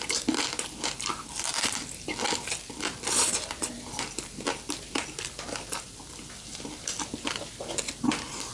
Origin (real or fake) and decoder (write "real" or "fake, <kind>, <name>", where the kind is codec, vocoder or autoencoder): fake, vocoder, BigVGAN v2